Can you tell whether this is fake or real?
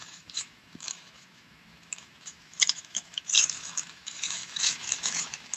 fake